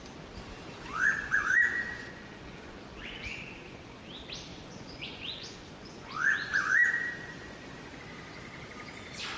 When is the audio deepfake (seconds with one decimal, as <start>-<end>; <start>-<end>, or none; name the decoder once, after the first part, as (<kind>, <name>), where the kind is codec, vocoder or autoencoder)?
0.9-4.0 (vocoder, Vocos); 4.5-8.0

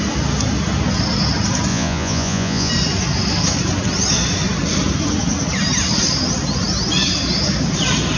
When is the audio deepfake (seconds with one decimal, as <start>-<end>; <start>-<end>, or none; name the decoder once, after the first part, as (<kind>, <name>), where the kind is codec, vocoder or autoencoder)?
1.7-2.7 (vocoder, Vocos)

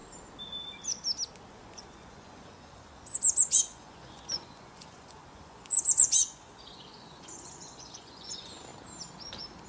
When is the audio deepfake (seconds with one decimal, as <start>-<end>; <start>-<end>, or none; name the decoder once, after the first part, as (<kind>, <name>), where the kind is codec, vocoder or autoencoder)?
1.5-8.7 (vocoder, Vocos)

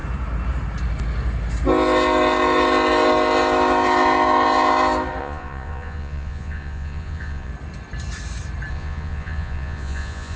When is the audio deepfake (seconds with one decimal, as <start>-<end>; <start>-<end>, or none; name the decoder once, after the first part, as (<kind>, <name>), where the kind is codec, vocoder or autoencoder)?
5.2-7.5 (vocoder, Vocos); 8.7-10.4

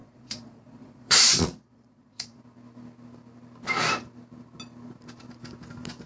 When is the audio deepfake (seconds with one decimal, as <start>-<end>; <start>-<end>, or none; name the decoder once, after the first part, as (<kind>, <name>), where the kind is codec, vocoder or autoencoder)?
0.0-2.4 (vocoder, Vocos)

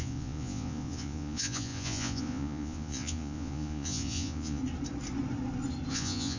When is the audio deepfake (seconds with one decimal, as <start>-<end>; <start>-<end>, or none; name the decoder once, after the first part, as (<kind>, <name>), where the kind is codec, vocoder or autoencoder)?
0.0-4.6 (vocoder, Vocos); 5.9-6.4

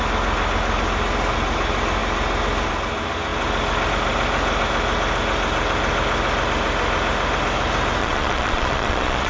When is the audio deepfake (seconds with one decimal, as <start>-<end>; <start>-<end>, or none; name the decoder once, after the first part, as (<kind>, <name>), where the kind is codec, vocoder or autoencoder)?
8.0-9.3 (vocoder, Vocos)

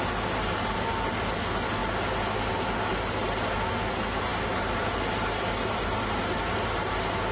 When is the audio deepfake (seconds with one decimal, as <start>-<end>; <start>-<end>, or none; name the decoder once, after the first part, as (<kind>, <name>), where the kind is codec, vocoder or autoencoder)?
none